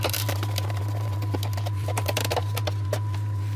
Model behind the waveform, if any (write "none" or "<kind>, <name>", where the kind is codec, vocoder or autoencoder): none